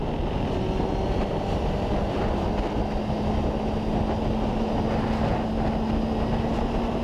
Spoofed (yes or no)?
no